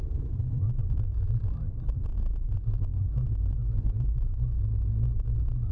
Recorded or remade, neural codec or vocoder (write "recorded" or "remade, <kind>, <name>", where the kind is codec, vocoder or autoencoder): recorded